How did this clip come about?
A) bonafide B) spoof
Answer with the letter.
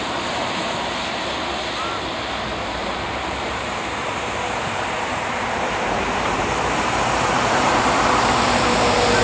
B